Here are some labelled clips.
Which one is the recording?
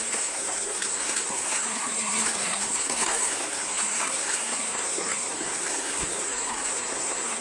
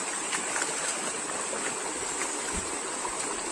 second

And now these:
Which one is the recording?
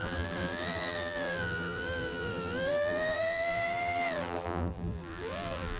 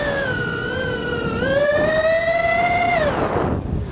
second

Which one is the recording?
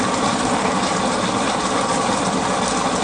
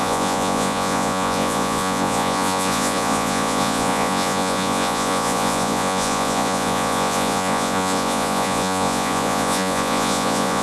first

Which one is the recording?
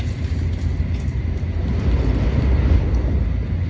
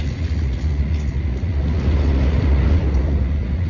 first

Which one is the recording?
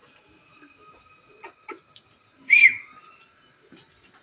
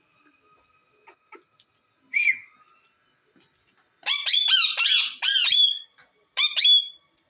second